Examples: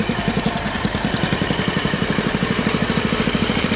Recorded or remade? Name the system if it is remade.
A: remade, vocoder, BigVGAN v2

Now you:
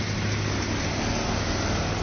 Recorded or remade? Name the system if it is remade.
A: recorded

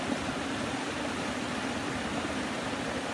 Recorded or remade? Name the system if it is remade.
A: recorded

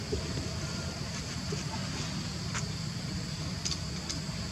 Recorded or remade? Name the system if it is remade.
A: remade, vocoder, BigVGAN v2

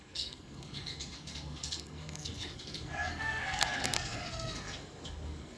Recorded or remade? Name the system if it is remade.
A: remade, codec, SNAC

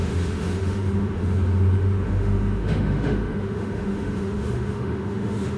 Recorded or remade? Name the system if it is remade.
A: remade, autoencoder, DAC-VAE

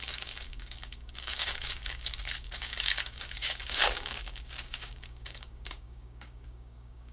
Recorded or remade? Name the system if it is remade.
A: remade, codec, DAC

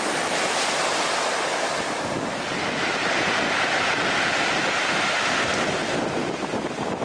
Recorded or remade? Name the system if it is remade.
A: recorded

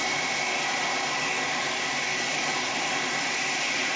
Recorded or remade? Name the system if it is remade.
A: recorded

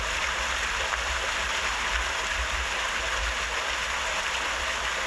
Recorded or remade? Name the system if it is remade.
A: recorded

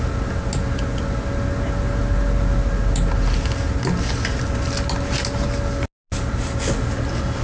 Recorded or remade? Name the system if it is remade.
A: recorded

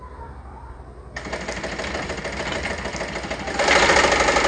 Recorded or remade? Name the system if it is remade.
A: recorded